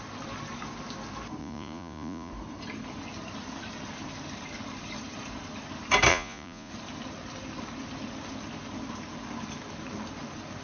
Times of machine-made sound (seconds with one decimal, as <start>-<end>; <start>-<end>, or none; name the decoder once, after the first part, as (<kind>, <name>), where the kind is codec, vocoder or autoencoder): 1.4-2.3 (vocoder, Vocos); 6.1-6.7